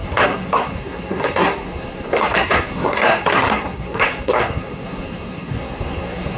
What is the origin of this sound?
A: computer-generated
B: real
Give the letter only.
A